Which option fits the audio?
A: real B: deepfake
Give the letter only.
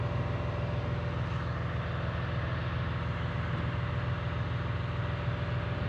A